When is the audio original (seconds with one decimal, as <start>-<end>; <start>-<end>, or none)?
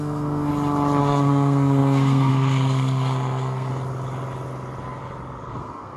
0.5-1.0; 3.7-5.5